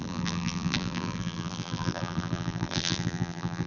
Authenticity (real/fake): fake